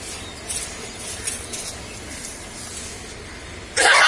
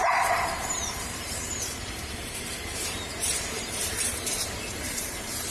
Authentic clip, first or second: first